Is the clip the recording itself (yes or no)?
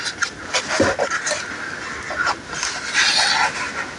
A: yes